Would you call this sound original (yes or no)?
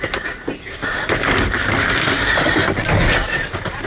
yes